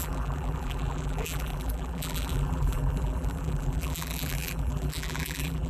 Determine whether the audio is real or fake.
fake